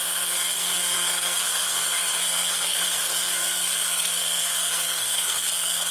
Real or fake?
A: fake